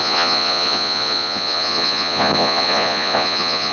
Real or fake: fake